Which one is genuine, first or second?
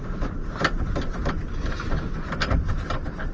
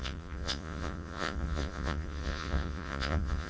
first